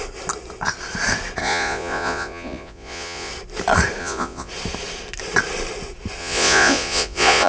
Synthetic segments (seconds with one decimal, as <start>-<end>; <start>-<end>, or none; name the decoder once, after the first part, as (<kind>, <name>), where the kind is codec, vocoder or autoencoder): 1.4-3.3 (vocoder, Vocos); 4.0-4.5; 6.2-7.5